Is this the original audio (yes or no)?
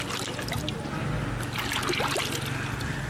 yes